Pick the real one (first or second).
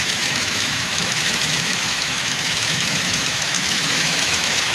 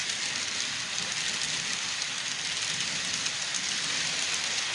second